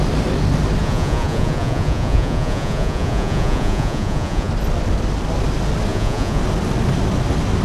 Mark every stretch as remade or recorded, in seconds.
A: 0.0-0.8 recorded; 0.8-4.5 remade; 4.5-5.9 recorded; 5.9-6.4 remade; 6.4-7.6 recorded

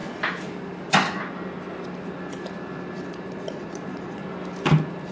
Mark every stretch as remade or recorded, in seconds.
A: 0.0-3.1 recorded; 3.1-4.2 remade; 4.2-5.1 recorded